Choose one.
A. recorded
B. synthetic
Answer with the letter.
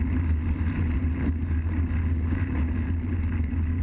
A